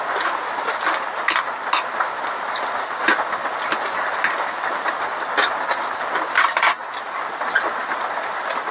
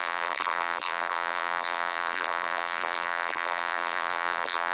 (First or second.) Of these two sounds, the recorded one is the first